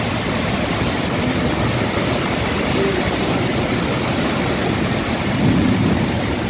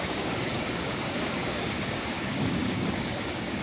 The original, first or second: first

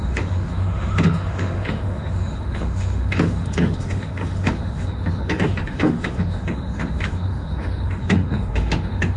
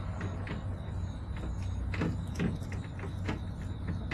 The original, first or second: second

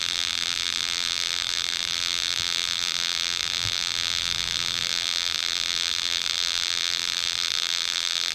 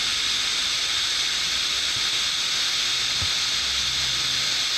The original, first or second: second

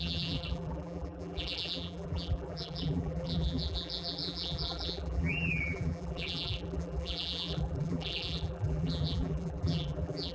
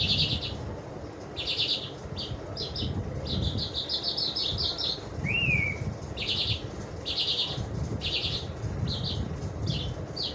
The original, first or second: second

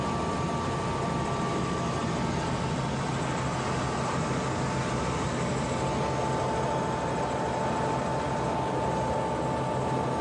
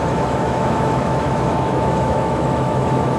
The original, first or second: first